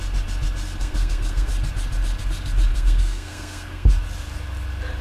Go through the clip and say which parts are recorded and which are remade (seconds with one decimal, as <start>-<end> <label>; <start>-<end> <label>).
0.0-0.8 recorded; 0.8-1.5 remade; 1.5-2.7 recorded; 2.7-3.9 remade; 3.9-5.0 recorded